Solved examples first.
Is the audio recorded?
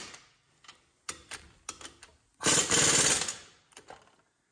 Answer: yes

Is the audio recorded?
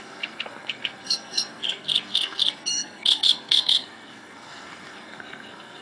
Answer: no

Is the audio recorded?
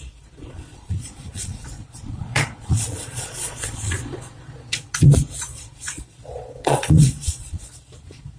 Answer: no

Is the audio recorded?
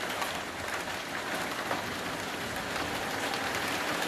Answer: yes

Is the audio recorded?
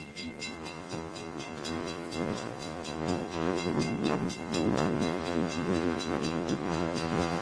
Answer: no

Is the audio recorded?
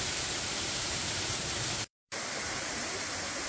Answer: no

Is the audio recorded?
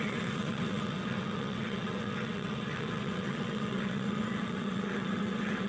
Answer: no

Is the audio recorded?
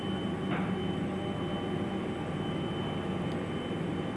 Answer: yes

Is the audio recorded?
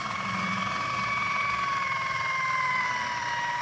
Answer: no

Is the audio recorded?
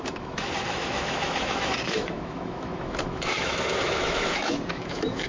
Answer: no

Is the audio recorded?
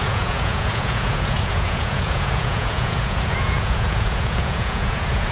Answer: no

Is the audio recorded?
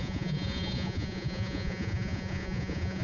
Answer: no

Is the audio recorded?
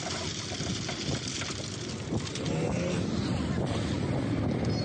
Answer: yes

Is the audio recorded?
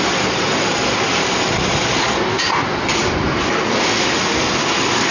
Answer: yes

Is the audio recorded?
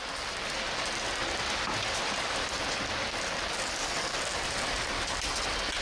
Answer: yes